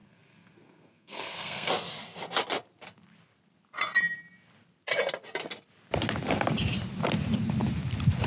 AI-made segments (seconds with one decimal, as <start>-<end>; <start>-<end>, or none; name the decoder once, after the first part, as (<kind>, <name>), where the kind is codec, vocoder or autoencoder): 0.0-1.7 (codec, SNAC)